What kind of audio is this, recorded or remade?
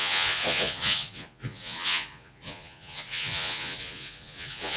remade